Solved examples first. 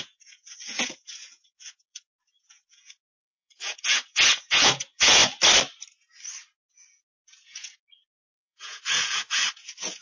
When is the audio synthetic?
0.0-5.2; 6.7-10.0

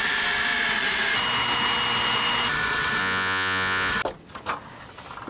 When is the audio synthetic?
3.0-3.9